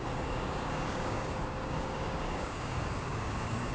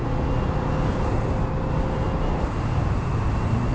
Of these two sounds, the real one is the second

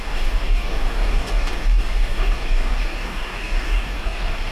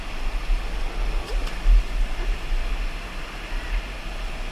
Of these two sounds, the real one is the second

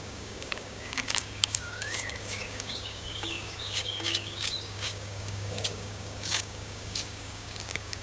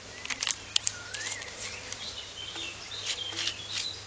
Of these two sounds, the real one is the second